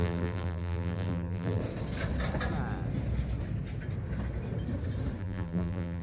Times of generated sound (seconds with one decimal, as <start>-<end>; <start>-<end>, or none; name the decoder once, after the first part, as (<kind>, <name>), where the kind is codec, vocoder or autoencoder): 0.0-1.6 (vocoder, BigVGAN v2); 5.2-6.0